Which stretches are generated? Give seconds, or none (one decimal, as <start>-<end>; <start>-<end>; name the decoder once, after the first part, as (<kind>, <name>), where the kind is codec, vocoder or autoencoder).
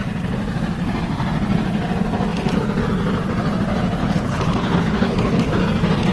4.0-5.5 (codec, HILCodec)